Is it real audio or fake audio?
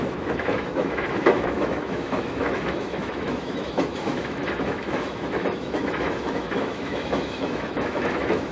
fake